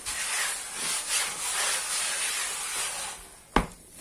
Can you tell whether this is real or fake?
real